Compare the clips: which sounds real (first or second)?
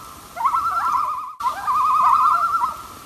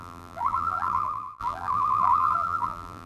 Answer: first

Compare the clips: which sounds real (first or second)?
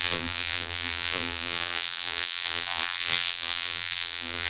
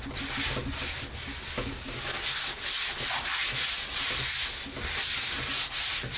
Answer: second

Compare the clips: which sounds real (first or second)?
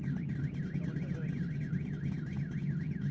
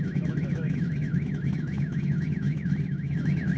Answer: first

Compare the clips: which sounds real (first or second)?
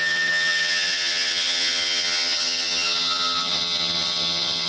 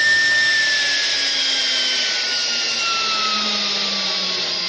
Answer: second